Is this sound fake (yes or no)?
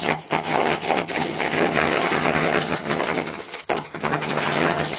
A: yes